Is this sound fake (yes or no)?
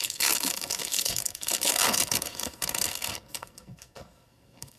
yes